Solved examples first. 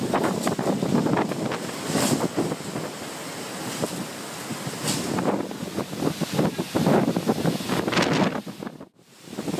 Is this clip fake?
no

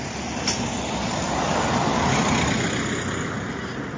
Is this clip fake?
no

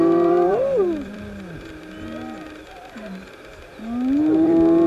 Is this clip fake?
yes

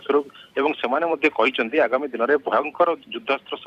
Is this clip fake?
yes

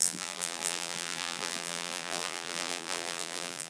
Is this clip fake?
yes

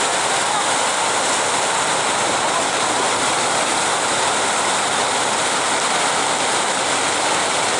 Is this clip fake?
no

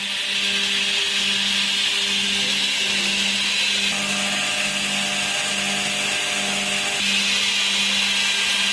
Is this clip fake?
no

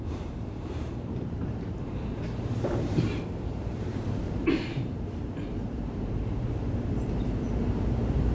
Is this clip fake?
yes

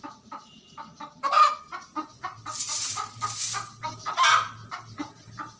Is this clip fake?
no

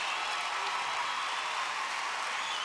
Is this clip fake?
no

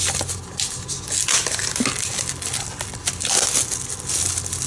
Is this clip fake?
no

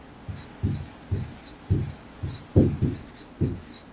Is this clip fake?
no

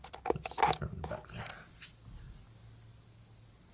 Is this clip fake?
no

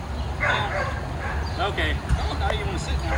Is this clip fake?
no